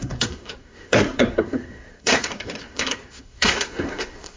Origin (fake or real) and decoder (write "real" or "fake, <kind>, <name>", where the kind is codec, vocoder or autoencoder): fake, codec, SNAC